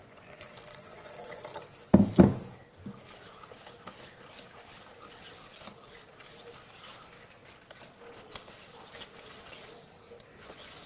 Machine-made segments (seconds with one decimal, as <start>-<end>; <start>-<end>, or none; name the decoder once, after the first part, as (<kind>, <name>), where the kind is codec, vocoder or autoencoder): 0.0-1.4 (vocoder, Vocos); 10.3-10.9